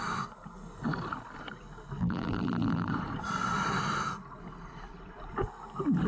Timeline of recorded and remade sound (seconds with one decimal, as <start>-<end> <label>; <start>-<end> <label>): 0.0-2.0 recorded; 2.0-2.9 remade; 2.9-6.1 recorded